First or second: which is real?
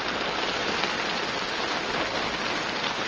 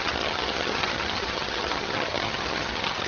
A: first